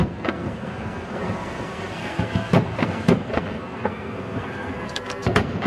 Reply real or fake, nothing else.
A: fake